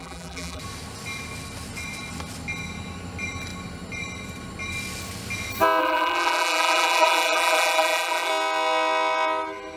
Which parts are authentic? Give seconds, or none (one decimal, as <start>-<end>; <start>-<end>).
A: 0.6-5.8; 8.3-9.8